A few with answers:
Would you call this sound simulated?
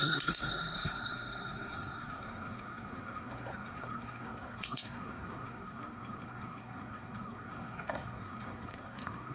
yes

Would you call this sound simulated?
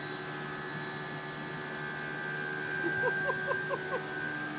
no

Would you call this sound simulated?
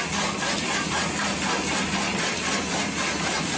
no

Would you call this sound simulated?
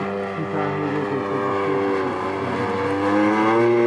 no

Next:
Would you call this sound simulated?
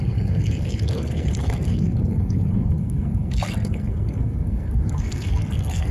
yes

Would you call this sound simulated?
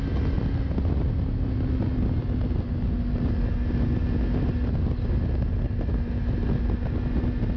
no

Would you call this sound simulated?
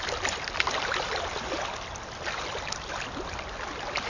no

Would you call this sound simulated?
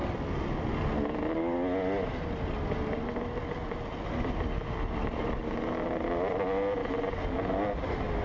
no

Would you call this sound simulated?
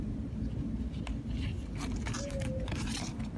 no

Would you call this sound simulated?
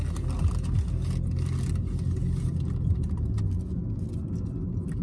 no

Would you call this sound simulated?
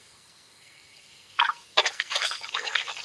yes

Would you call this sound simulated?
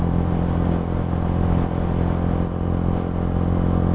no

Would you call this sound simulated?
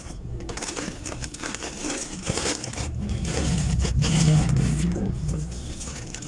yes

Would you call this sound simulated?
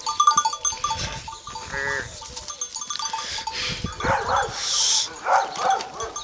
no